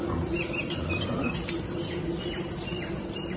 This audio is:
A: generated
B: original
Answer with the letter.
A